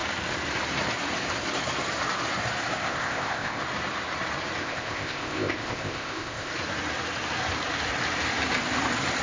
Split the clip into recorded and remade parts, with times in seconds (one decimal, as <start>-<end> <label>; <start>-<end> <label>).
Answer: 0.0-2.8 recorded; 2.8-3.6 remade; 3.6-4.6 recorded; 4.6-6.5 remade; 6.5-9.2 recorded